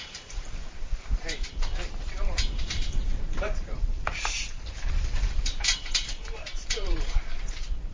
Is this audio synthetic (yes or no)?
yes